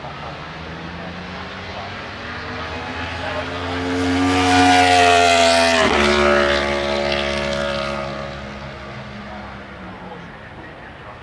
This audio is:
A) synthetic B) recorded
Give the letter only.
B